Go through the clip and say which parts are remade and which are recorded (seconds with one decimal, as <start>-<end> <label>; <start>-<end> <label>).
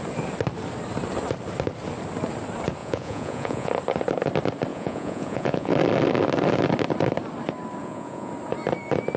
0.0-2.8 recorded; 2.8-3.7 remade; 3.7-4.7 recorded; 4.7-5.7 remade; 5.7-7.8 recorded; 7.8-8.3 remade; 8.3-9.2 recorded